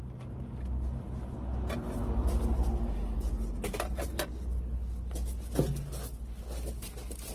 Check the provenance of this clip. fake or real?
real